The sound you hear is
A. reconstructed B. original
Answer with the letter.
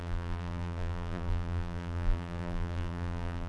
A